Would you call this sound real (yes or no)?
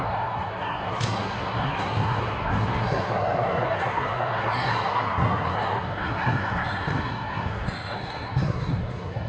no